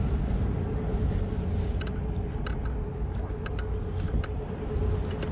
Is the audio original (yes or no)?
yes